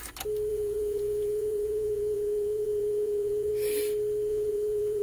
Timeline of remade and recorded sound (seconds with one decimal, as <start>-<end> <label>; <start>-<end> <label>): 0.0-0.5 recorded; 0.5-3.5 remade; 3.5-4.3 recorded; 4.3-5.0 remade